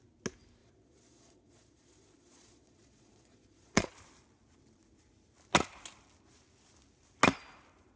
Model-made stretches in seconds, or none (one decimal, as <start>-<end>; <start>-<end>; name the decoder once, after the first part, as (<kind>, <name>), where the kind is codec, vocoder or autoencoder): 0.6-3.9 (vocoder, Vocos)